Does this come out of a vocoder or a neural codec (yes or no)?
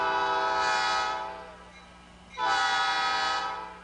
no